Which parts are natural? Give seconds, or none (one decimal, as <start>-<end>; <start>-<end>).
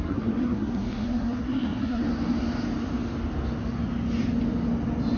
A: 2.0-5.2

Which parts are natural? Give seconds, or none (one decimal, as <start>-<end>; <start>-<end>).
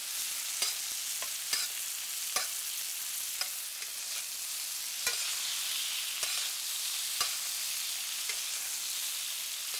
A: 0.0-9.8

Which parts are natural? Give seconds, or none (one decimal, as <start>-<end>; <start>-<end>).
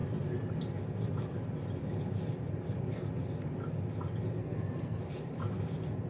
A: 0.0-4.4; 5.0-6.1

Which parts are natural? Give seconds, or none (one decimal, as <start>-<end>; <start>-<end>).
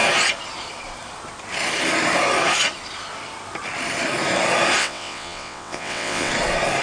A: 0.0-4.8; 6.3-6.8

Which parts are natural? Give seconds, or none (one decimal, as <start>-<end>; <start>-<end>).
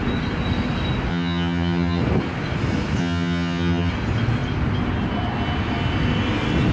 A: 0.0-1.1; 2.0-3.0; 3.9-6.7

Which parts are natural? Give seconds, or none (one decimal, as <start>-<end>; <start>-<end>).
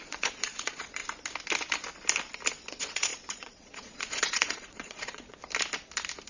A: 1.0-2.7; 5.4-6.3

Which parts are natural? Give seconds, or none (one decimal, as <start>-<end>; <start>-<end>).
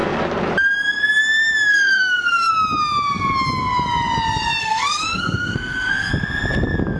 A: 0.0-1.7; 2.5-4.6; 6.1-7.0